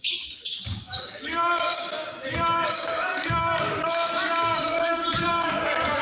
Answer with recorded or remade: remade